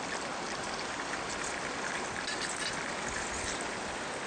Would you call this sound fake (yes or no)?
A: no